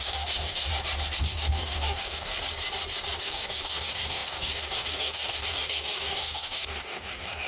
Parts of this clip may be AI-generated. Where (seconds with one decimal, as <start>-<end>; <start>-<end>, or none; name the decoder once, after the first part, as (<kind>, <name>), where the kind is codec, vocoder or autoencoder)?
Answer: 0.0-0.7 (codec, DAC); 1.2-2.3; 3.2-7.5